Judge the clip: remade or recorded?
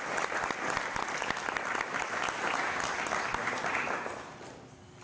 recorded